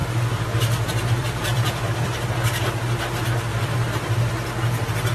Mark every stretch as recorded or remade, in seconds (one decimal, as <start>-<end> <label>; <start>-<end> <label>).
0.0-3.0 remade; 3.0-3.5 recorded; 3.5-4.3 remade; 4.3-5.1 recorded